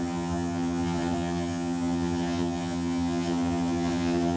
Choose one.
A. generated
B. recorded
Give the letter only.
A